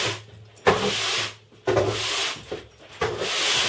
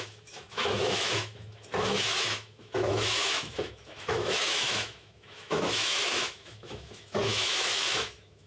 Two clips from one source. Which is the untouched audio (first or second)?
first